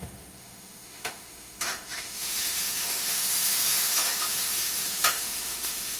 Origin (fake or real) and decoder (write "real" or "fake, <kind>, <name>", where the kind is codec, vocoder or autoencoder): fake, autoencoder, DAC-VAE